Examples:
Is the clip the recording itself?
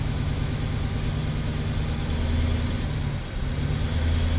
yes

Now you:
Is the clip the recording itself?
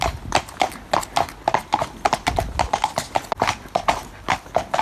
yes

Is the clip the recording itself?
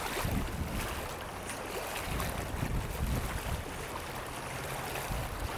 yes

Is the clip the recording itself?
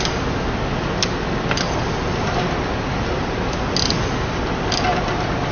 yes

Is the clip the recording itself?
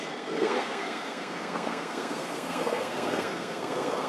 no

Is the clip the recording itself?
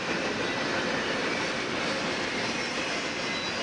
yes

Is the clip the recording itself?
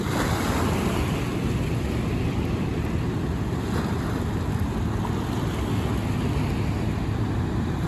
yes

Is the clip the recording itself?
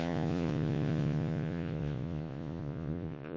no